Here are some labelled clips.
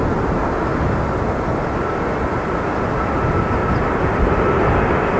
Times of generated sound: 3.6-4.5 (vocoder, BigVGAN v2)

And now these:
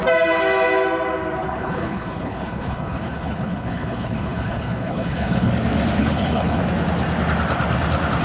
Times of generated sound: 1.4-5.5 (codec, HILCodec); 6.0-6.6

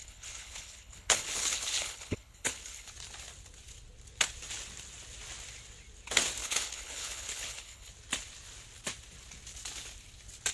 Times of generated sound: 0.0-2.9 (codec, HILCodec); 6.4-7.9

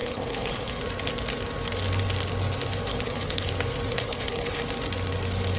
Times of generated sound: 0.0-0.8 (codec, HILCodec); 2.9-3.5; 3.9-4.6

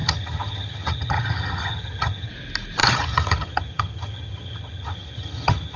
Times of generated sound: 0.0-2.3 (vocoder, HiFi-GAN); 2.8-5.8

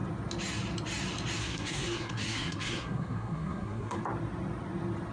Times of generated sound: 1.4-4.0 (codec, SNAC)

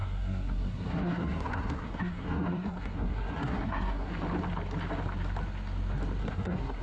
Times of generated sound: 0.0-4.1 (codec, SNAC); 6.2-6.8

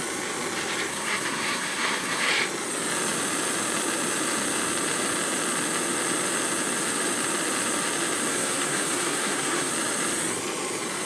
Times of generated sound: 0.9-2.3 (codec, SNAC); 8.3-9.7